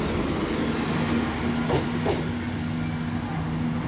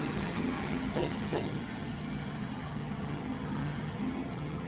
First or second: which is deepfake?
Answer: second